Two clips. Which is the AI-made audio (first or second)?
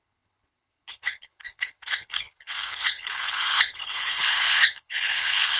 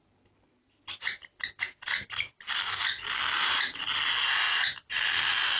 first